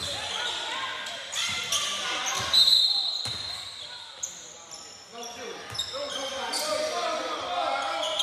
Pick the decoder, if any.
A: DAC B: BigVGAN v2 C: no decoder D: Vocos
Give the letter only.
C